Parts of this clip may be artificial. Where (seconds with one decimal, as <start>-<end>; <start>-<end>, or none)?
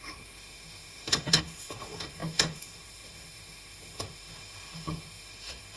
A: 0.0-5.8